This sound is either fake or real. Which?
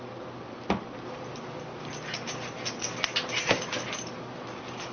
real